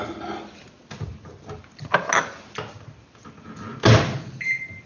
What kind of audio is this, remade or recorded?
recorded